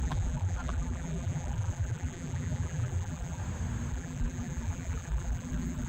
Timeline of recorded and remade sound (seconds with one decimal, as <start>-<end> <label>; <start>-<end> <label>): 0.0-3.4 remade; 3.4-3.9 recorded; 3.9-5.9 remade